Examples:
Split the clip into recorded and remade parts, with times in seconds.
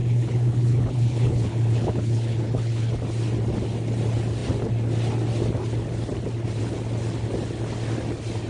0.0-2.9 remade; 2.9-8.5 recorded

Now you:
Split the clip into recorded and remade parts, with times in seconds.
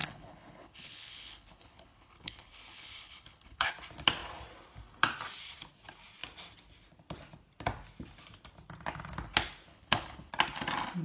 0.0-3.7 remade; 3.7-9.7 recorded; 9.7-10.3 remade; 10.3-11.0 recorded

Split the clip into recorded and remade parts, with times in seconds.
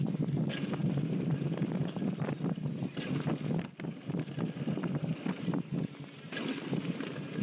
0.0-7.4 recorded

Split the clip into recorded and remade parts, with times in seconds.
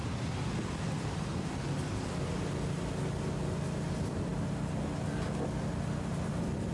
0.0-6.7 recorded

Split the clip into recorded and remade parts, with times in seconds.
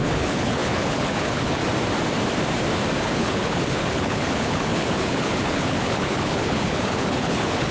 0.0-1.6 remade; 1.6-3.0 recorded; 3.0-7.7 remade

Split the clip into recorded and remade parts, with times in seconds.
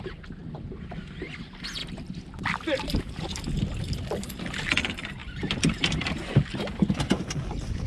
0.0-7.9 recorded